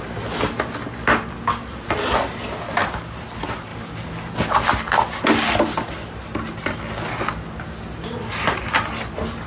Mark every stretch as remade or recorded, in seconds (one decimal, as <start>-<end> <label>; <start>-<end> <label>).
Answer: 0.0-9.5 recorded